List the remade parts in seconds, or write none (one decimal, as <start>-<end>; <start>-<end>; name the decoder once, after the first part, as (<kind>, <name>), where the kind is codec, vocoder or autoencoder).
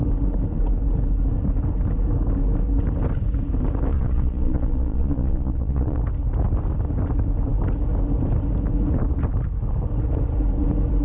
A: 3.9-6.0 (vocoder, Vocos)